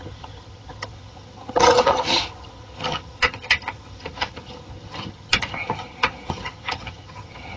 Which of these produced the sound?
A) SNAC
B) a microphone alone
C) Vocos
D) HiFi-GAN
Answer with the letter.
D